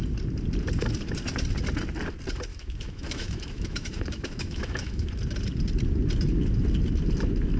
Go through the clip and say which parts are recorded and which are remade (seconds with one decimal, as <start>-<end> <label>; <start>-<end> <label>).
0.0-2.5 recorded; 2.5-5.1 remade; 5.1-7.6 recorded